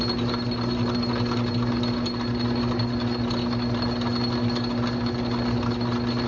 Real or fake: real